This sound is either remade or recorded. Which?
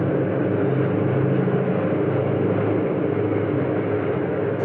recorded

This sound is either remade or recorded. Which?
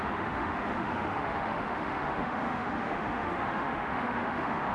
remade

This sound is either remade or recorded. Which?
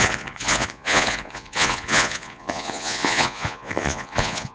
remade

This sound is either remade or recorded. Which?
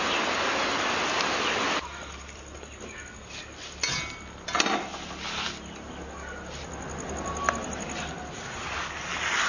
recorded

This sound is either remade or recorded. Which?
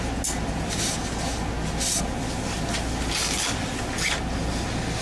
recorded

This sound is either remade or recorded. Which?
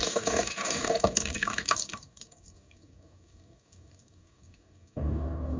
remade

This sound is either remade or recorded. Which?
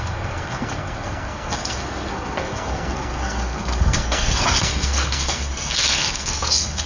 remade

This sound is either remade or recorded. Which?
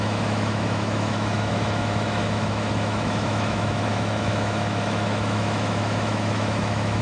remade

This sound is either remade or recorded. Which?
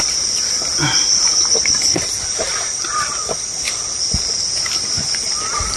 recorded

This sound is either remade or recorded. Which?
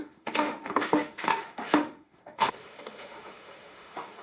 remade